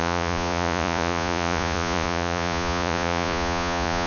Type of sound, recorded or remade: remade